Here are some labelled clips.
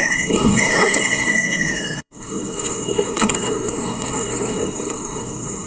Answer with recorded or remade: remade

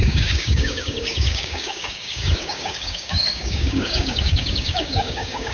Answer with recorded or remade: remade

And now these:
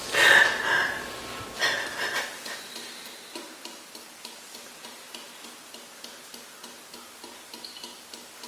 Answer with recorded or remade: recorded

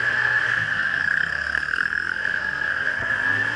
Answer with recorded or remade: remade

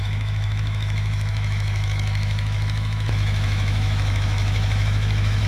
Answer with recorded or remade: remade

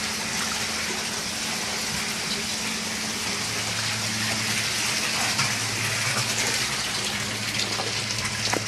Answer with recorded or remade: recorded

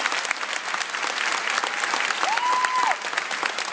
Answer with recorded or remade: recorded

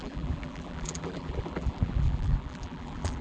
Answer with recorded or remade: remade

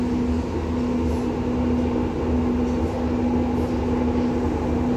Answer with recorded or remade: recorded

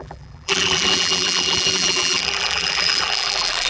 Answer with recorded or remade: remade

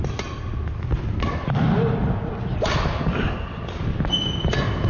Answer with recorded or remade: recorded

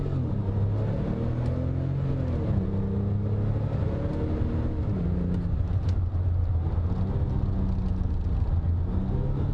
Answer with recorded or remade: recorded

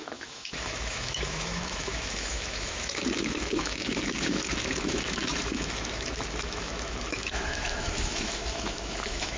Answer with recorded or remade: remade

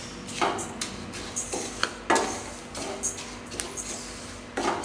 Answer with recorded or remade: recorded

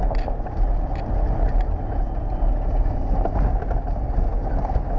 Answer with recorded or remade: recorded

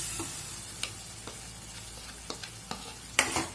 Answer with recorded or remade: recorded